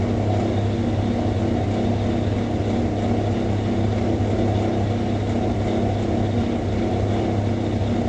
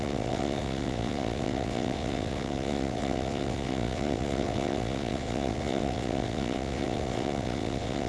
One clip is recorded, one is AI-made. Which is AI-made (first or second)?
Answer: second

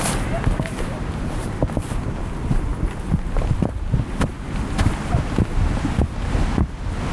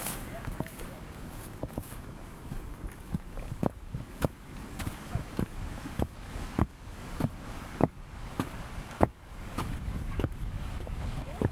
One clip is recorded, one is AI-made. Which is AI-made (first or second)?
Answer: second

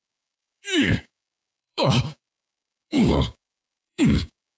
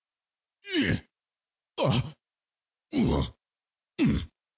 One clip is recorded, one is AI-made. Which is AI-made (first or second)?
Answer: first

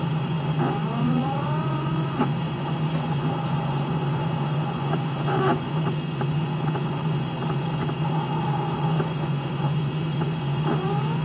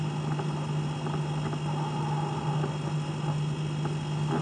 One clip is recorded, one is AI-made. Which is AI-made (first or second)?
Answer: first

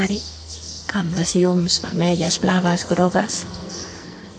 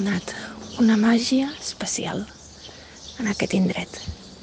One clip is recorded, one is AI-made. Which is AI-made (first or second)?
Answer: first